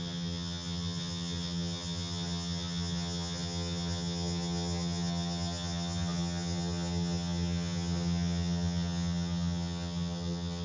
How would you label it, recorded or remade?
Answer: remade